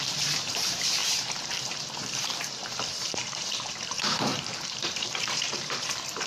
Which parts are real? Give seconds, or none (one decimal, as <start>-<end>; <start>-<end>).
none